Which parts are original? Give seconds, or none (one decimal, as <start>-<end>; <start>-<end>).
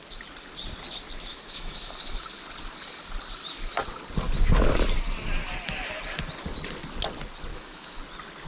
0.0-1.3; 1.9-7.5; 8.0-8.5